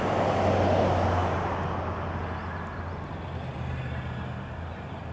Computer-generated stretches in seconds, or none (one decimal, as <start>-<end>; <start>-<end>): none